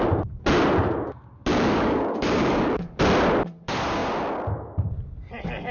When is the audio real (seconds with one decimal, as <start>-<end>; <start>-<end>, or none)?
0.0-1.5; 3.0-5.7